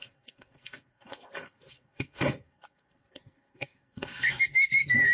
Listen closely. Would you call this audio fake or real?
fake